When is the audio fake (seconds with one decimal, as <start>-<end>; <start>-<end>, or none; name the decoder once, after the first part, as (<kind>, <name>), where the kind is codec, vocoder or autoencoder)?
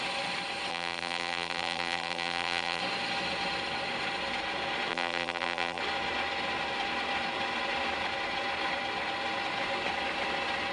0.7-2.8 (vocoder, BigVGAN v2); 4.9-5.8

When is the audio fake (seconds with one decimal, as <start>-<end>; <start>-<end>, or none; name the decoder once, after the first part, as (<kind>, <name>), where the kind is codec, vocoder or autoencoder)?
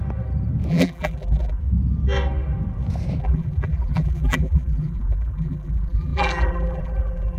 0.7-1.6 (vocoder, BigVGAN v2); 3.2-7.4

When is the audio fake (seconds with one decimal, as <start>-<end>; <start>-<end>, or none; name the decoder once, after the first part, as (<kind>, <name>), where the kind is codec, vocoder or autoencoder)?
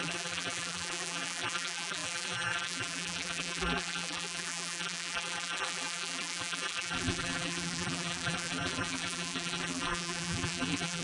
0.0-11.0 (vocoder, BigVGAN v2)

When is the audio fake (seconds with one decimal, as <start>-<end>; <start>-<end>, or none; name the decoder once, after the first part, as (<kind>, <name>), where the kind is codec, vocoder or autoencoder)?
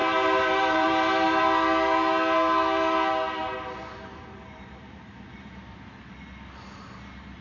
0.0-1.4 (vocoder, BigVGAN v2); 3.4-5.6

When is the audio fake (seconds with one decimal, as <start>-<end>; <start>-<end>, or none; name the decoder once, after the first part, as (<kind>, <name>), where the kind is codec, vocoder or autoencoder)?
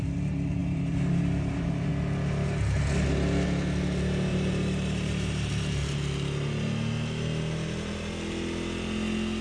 0.6-1.9 (vocoder, BigVGAN v2); 4.3-5.5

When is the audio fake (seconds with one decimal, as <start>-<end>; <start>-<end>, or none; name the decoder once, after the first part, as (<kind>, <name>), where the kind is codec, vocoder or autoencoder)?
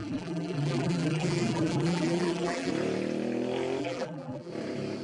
0.0-2.7 (vocoder, BigVGAN v2); 3.8-4.5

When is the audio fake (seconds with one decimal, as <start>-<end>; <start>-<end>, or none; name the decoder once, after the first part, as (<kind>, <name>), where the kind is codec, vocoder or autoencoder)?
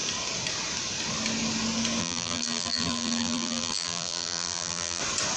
2.0-5.0 (vocoder, BigVGAN v2)